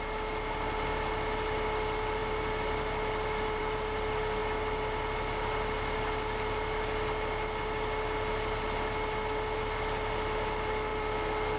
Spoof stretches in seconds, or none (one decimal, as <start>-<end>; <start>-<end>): 10.9-11.6